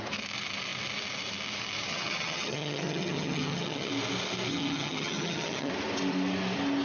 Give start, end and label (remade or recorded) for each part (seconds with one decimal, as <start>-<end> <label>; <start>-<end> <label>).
0.0-1.9 recorded; 1.9-3.9 remade; 3.9-4.5 recorded; 4.5-5.7 remade; 5.7-6.8 recorded